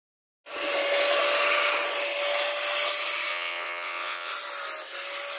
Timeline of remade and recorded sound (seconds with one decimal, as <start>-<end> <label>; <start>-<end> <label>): 0.0-3.3 recorded; 3.3-4.3 remade; 4.3-5.4 recorded